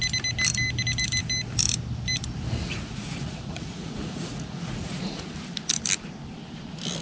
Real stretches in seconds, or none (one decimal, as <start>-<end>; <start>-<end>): 0.0-2.7; 5.3-7.0